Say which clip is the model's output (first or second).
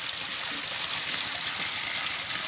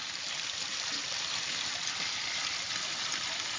second